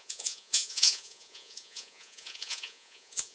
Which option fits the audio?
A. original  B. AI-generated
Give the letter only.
B